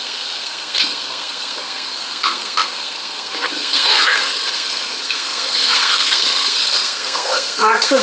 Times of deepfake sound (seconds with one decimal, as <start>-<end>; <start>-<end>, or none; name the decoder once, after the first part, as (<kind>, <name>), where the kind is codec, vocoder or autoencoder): 0.0-8.0 (codec, SNAC)